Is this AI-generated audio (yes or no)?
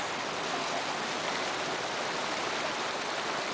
no